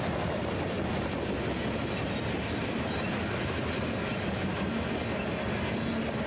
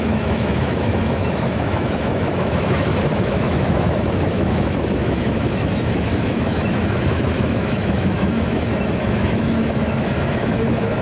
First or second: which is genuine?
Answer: first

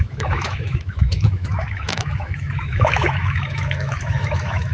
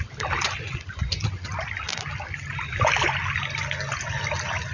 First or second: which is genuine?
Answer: second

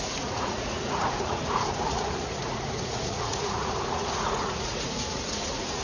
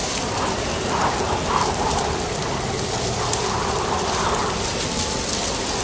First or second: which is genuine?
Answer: second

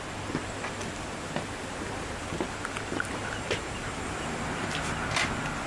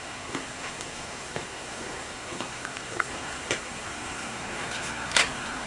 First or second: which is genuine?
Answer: first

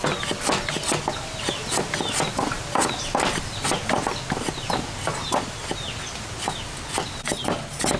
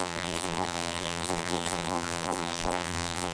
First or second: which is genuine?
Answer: first